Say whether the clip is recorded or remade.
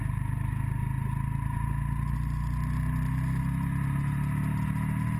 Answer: recorded